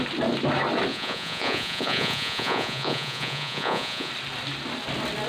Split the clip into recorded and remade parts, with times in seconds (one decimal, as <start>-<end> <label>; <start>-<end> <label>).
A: 0.0-0.9 recorded; 0.9-4.1 remade; 4.1-5.3 recorded